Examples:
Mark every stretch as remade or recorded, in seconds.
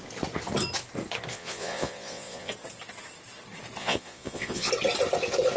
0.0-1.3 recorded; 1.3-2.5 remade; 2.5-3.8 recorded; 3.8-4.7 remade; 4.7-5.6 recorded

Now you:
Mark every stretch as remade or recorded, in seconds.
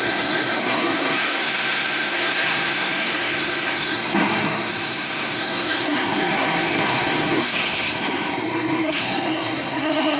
0.0-10.2 remade